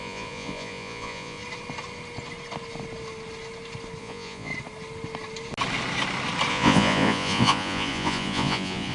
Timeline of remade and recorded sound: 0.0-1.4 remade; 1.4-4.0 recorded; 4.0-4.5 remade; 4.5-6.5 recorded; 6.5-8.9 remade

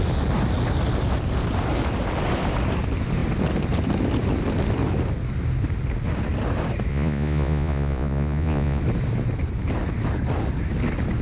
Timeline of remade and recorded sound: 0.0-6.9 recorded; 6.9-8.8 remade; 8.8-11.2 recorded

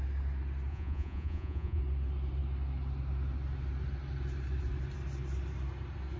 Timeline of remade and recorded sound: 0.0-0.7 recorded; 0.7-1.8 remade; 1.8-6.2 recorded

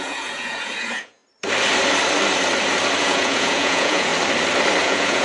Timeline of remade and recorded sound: 0.0-1.2 remade; 1.2-3.0 recorded; 3.0-4.1 remade; 4.1-4.8 recorded; 4.8-5.2 remade

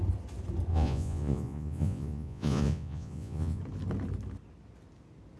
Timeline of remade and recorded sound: 0.0-0.7 recorded; 0.7-3.6 remade; 3.6-5.4 recorded

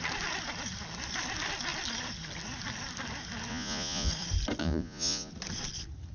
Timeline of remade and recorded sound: 0.0-3.5 recorded; 3.5-4.1 remade; 4.1-4.6 recorded; 4.6-5.3 remade; 5.3-6.1 recorded

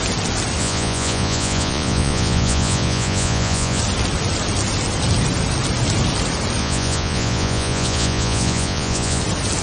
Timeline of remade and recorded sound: 0.0-0.6 recorded; 0.6-3.8 remade; 3.8-6.6 recorded; 6.6-9.2 remade; 9.2-9.6 recorded

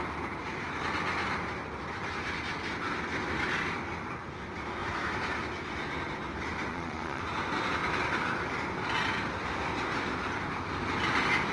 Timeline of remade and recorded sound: 0.0-6.7 recorded; 6.7-7.2 remade; 7.2-11.5 recorded